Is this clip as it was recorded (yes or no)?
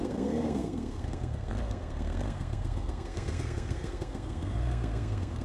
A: no